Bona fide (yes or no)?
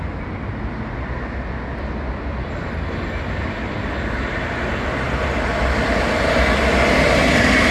yes